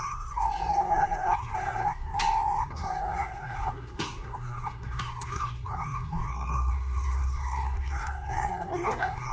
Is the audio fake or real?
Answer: fake